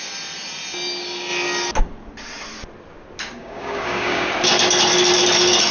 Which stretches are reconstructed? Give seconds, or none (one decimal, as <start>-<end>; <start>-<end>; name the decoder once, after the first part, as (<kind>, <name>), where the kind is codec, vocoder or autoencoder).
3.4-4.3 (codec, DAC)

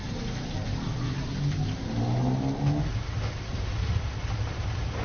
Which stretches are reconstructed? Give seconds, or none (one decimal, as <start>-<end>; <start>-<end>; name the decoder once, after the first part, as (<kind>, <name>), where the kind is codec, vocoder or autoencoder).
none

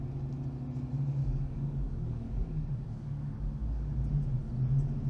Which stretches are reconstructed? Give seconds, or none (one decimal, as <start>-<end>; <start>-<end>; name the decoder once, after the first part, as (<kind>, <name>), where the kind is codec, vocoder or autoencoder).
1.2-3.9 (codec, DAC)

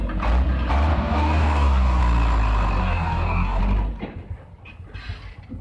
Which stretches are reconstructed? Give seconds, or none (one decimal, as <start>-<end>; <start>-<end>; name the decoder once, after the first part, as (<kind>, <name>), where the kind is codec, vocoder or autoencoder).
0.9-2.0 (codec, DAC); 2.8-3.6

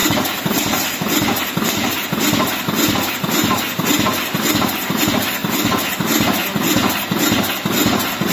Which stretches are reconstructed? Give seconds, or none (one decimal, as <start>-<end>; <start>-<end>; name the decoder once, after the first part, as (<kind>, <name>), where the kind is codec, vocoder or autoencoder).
none

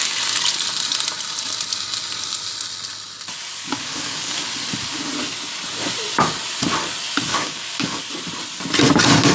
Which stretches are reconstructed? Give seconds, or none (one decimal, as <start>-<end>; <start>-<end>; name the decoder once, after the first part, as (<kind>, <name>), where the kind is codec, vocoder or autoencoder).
3.6-4.4 (codec, DAC); 7.3-8.0